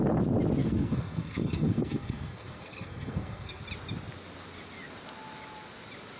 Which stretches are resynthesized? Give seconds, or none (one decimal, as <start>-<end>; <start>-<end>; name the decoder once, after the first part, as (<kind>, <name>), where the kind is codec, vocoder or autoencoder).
0.6-3.6 (codec, SNAC)